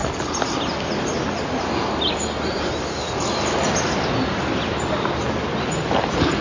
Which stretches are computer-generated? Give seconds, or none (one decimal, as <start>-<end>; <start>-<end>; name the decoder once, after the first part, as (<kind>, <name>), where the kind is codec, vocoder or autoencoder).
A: none